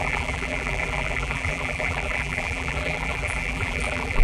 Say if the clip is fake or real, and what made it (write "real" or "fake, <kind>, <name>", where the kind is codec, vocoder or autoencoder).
fake, vocoder, BigVGAN v2